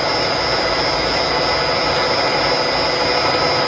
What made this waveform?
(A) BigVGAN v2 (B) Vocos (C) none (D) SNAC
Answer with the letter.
C